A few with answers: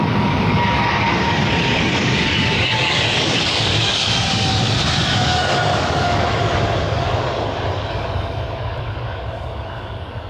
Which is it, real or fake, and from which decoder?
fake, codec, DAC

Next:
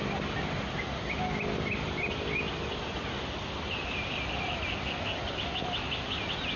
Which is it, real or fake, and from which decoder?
real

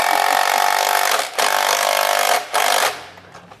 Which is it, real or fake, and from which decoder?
real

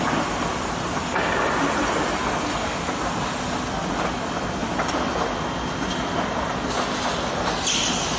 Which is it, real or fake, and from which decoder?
real